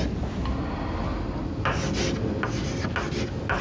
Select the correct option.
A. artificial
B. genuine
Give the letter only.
B